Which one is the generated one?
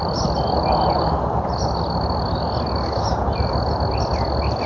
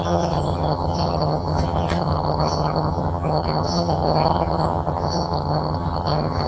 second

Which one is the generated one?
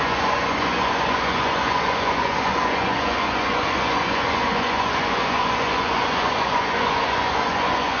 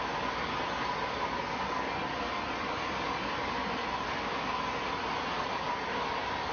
first